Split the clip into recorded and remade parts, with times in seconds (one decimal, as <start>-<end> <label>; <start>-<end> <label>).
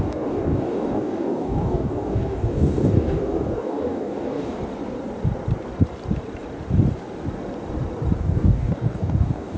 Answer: 0.0-4.6 remade; 4.6-8.2 recorded; 8.2-9.6 remade